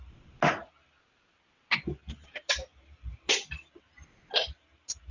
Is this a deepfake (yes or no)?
no